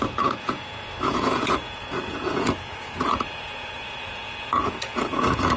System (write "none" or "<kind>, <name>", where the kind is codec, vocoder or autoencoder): vocoder, Vocos